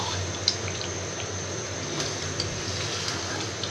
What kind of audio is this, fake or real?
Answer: real